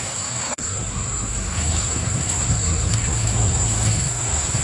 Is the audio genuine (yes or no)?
no